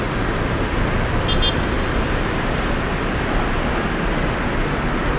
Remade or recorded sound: recorded